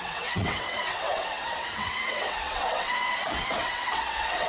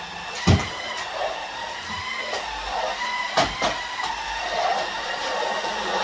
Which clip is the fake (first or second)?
first